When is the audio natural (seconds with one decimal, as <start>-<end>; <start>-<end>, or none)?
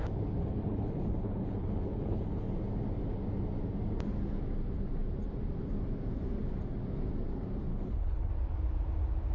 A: 0.0-0.4; 2.5-7.7; 8.3-9.3